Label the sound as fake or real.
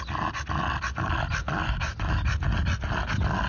real